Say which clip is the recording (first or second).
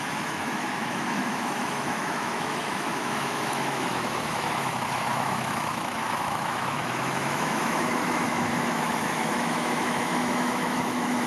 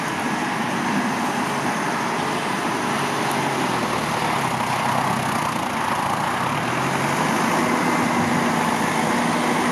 second